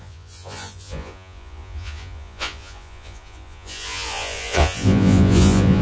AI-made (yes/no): yes